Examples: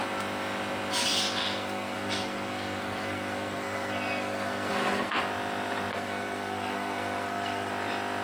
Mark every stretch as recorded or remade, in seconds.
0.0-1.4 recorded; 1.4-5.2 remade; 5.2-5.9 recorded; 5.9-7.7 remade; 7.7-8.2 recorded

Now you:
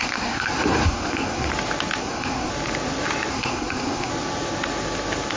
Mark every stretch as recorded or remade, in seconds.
0.0-1.5 remade; 1.5-2.0 recorded; 2.0-2.5 remade; 2.5-3.3 recorded; 3.3-4.1 remade; 4.1-5.4 recorded

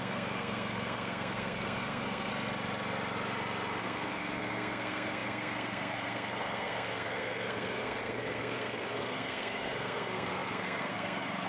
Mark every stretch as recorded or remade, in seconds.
0.0-2.3 remade; 2.3-3.8 recorded; 3.8-11.5 remade

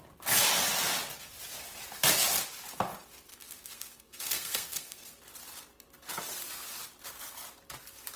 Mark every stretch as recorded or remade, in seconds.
0.0-3.3 recorded; 3.3-5.2 remade; 5.2-8.2 recorded

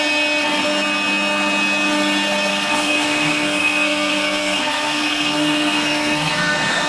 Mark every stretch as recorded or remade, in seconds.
0.0-2.5 recorded; 2.5-6.9 remade